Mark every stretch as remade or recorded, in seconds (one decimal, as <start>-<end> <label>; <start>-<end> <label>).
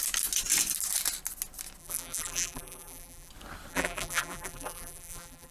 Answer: 0.0-1.8 recorded; 1.8-3.3 remade; 3.3-3.7 recorded; 3.7-5.5 remade